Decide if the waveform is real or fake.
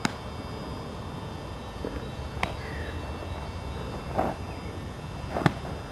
real